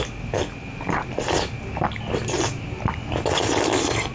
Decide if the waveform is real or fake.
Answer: real